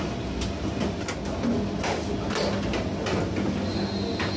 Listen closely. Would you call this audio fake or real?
real